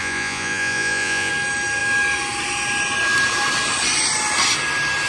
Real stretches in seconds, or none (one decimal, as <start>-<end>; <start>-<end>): 1.3-5.1